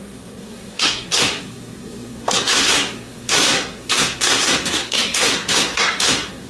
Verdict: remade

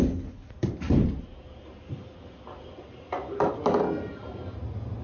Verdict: recorded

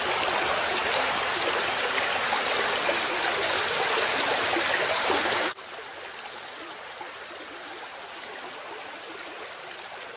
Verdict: recorded